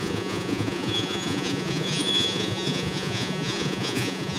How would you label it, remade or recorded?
remade